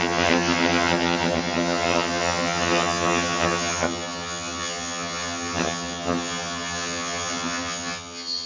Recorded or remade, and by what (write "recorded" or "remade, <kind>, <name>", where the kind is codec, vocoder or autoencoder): remade, vocoder, HiFi-GAN